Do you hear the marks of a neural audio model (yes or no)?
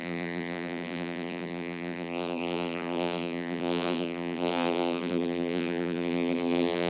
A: yes